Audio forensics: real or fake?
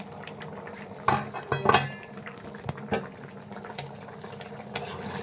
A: real